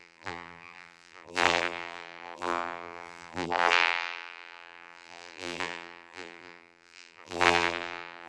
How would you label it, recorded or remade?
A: remade